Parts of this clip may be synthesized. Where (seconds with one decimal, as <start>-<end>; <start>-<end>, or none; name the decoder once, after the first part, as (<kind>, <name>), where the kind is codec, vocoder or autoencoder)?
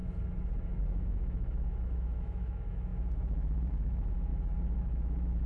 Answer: 0.8-4.3 (autoencoder, DAC-VAE); 4.8-5.5